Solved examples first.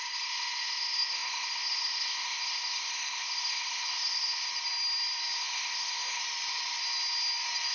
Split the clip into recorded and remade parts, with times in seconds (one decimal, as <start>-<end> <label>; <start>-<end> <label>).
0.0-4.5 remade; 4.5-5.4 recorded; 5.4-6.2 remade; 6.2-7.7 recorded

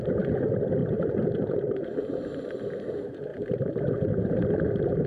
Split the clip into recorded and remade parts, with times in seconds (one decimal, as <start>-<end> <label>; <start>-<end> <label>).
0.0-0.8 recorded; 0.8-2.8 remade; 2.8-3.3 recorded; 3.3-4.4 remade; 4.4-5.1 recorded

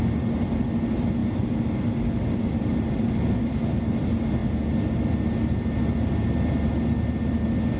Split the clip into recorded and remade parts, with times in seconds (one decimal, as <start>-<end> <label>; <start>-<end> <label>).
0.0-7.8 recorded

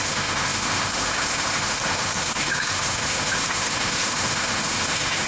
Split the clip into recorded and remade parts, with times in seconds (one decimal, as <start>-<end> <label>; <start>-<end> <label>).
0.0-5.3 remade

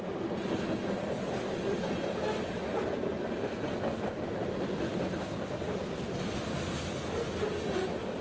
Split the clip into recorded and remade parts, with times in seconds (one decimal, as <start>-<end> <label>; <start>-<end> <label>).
0.0-8.2 recorded

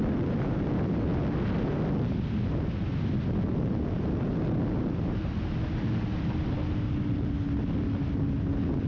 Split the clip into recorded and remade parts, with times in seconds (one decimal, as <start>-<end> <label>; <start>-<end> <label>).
0.0-8.9 recorded

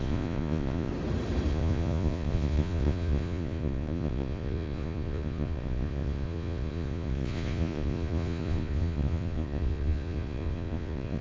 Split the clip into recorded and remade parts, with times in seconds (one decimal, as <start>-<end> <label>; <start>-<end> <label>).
0.0-0.9 remade; 0.9-1.5 recorded; 1.5-11.2 remade